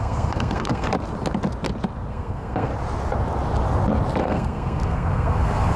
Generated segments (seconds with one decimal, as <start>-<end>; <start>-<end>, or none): 0.0-0.9; 2.1-2.7; 4.2-5.8